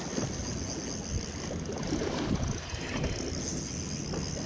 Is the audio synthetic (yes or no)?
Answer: no